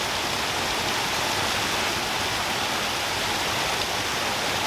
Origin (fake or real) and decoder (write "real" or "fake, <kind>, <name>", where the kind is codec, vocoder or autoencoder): real